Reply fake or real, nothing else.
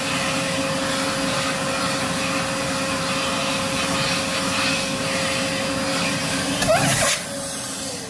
real